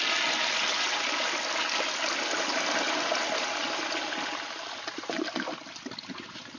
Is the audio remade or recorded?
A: recorded